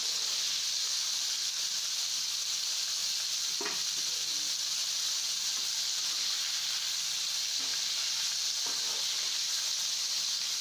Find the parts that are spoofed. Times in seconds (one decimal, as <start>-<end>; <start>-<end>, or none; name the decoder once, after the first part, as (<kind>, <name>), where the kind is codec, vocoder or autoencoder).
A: 0.0-0.7 (vocoder, BigVGAN v2); 7.7-8.8